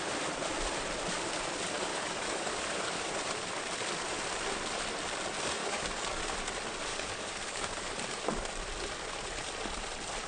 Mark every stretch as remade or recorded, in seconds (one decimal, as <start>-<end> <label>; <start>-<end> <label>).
0.0-1.9 recorded; 1.9-3.1 remade; 3.1-5.6 recorded; 5.6-6.2 remade; 6.2-6.9 recorded; 6.9-8.2 remade; 8.2-10.3 recorded